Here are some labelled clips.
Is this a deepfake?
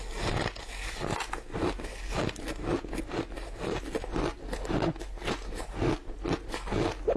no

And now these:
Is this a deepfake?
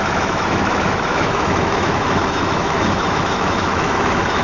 yes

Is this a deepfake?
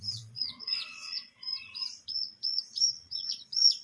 yes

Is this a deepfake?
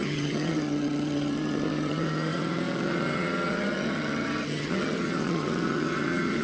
yes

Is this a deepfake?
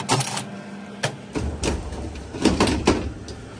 no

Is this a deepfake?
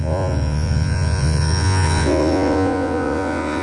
yes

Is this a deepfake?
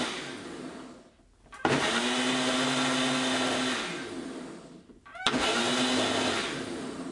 no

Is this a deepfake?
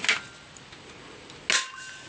no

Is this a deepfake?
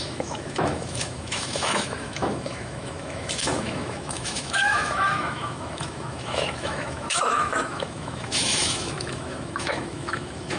yes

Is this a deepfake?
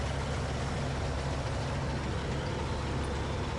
no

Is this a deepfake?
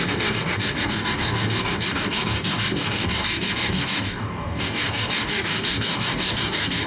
yes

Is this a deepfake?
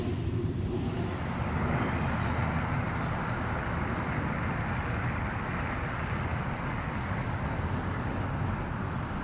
no